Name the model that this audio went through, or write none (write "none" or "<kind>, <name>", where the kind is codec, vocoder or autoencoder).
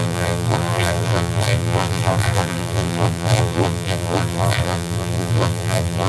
vocoder, BigVGAN v2